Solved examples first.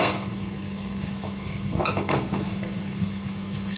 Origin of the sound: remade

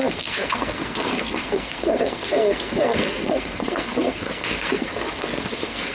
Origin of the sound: remade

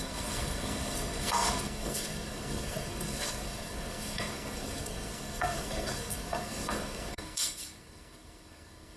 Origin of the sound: remade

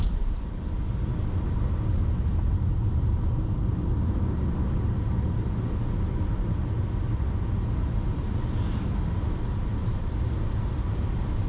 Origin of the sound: recorded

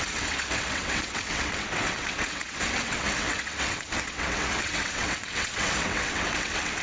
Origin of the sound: remade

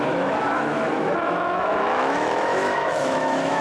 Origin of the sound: remade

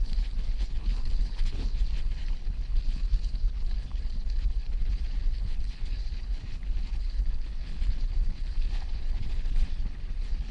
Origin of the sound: remade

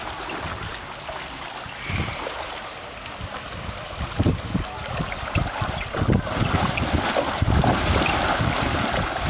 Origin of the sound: recorded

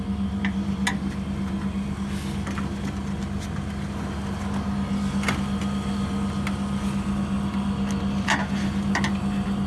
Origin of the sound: recorded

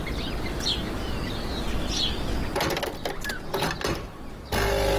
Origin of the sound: recorded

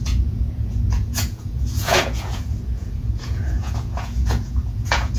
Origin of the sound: remade